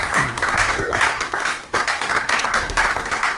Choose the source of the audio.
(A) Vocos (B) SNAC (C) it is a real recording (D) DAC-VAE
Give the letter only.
B